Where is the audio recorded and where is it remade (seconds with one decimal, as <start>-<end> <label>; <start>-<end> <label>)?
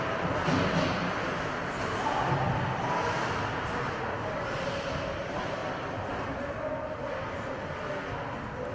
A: 0.0-8.7 recorded